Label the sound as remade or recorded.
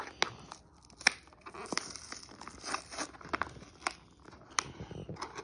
recorded